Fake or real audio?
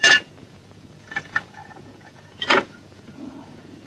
fake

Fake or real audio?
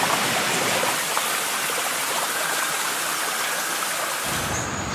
real